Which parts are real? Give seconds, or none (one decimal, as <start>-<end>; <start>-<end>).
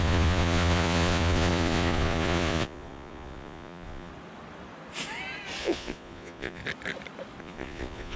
4.1-5.6; 6.6-7.4